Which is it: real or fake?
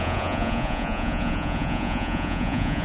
fake